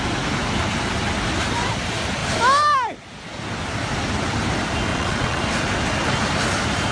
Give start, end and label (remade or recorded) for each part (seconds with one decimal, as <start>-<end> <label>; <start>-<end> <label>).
0.0-4.9 recorded; 4.9-5.4 remade; 5.4-6.9 recorded